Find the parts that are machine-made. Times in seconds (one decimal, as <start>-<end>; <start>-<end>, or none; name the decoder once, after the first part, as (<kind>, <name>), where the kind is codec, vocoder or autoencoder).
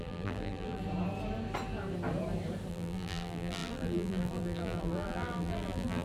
0.0-0.8 (vocoder, BigVGAN v2); 2.7-6.0